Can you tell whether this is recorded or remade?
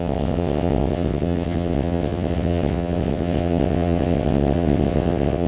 remade